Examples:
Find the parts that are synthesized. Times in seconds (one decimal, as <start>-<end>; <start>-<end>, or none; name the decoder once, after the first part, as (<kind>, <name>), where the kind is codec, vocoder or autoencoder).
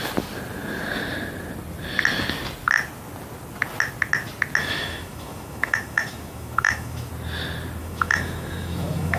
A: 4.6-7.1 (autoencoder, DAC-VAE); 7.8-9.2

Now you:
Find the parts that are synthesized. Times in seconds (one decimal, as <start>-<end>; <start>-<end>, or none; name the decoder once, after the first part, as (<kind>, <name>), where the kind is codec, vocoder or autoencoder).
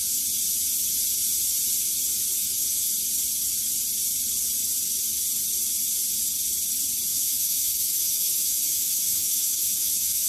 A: 2.4-2.9 (autoencoder, DAC-VAE); 7.1-10.3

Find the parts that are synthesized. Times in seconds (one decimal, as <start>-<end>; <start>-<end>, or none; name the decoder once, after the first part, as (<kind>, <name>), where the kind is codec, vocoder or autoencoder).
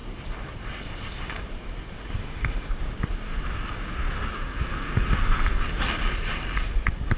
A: 2.2-2.7 (autoencoder, DAC-VAE); 4.3-5.2